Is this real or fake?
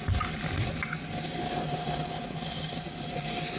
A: real